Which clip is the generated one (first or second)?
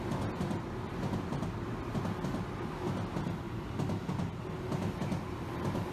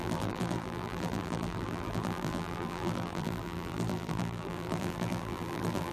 second